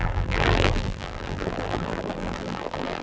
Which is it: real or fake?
fake